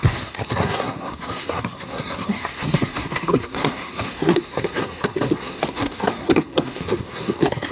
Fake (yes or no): yes